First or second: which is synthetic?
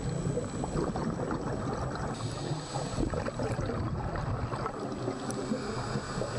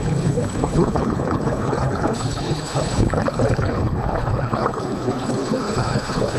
second